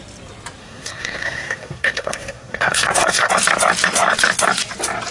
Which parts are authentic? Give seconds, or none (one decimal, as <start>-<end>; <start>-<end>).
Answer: 0.0-0.6; 3.3-5.1